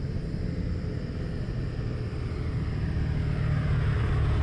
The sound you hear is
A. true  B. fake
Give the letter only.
A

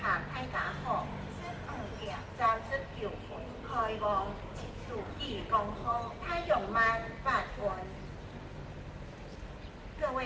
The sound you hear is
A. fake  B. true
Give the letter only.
B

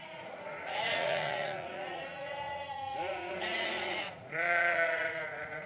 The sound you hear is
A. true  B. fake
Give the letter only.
B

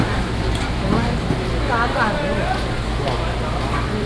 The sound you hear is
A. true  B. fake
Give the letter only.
A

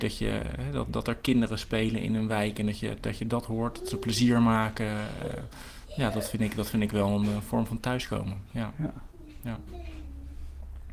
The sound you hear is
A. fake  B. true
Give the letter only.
B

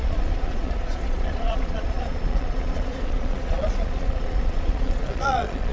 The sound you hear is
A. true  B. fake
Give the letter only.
B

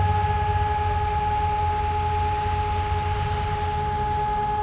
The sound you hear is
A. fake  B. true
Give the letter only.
B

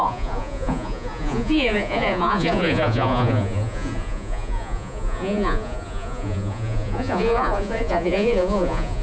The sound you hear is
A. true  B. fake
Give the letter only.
B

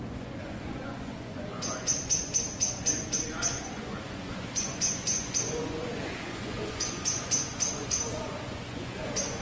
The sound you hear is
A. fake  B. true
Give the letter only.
A